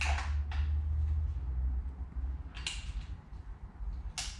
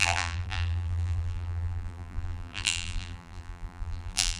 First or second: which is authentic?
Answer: first